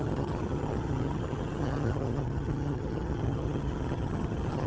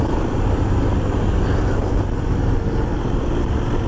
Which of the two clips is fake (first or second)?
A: first